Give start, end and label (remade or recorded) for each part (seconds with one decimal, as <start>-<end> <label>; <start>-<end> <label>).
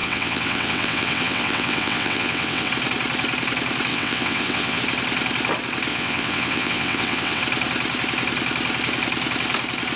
0.0-2.7 remade; 2.7-3.9 recorded; 3.9-4.8 remade; 4.8-5.9 recorded; 5.9-7.4 remade; 7.4-10.0 recorded